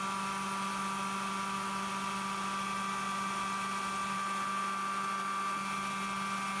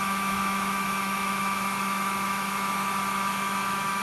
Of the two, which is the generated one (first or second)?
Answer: second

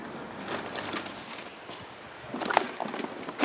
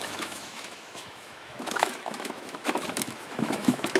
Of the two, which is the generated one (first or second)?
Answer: second